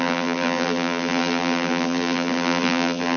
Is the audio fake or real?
fake